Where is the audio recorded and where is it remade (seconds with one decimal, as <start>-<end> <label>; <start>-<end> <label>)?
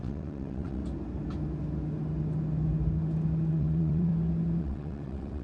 0.0-0.8 remade; 0.8-3.5 recorded; 3.5-4.1 remade; 4.1-4.6 recorded; 4.6-5.4 remade